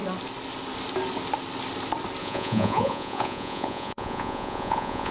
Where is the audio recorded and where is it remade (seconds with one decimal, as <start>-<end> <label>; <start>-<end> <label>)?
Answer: 0.0-2.2 recorded; 2.2-5.1 remade